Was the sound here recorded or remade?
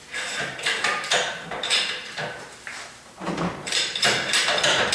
remade